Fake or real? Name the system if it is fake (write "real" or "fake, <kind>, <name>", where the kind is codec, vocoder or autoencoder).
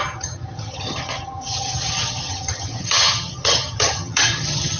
fake, vocoder, HiFi-GAN